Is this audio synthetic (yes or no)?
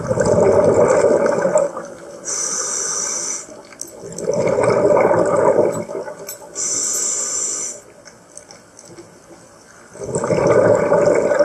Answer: no